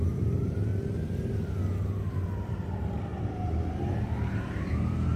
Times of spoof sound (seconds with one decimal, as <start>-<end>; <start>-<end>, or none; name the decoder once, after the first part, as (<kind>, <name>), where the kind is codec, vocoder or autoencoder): 0.0-0.7 (vocoder, BigVGAN v2); 2.5-3.1; 3.9-5.2